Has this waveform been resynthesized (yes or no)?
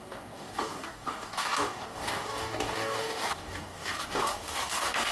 yes